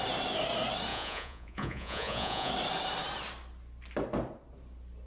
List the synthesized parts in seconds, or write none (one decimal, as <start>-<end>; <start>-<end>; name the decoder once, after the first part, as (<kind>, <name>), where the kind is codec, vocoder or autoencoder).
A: 0.9-2.5 (vocoder, Vocos)